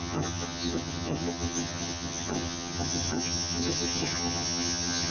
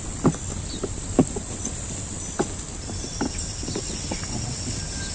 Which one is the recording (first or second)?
second